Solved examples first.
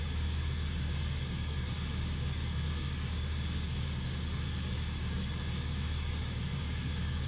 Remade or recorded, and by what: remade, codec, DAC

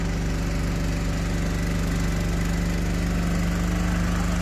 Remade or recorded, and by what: recorded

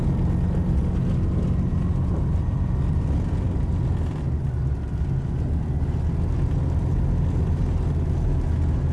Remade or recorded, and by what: recorded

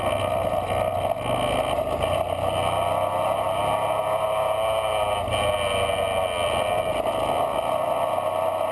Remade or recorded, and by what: recorded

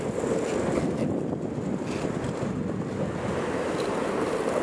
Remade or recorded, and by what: recorded